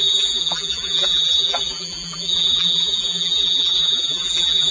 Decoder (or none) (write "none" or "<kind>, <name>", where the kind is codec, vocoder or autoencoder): vocoder, BigVGAN v2